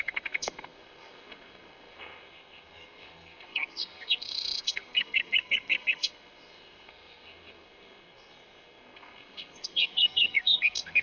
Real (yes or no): no